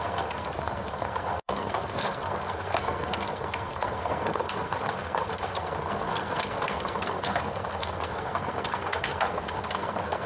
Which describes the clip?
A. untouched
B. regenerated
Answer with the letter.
B